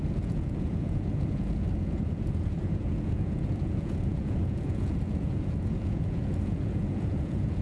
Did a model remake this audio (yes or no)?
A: yes